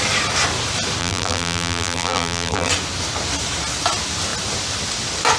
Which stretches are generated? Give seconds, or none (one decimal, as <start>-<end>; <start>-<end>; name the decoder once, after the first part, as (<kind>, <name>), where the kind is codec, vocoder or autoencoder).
1.0-2.7 (vocoder, BigVGAN v2)